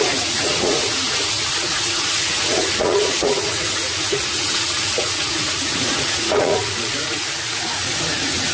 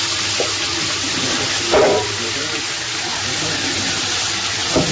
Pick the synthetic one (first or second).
first